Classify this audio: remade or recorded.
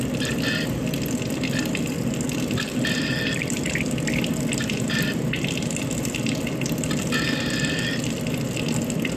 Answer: remade